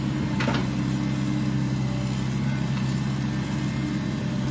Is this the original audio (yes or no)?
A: yes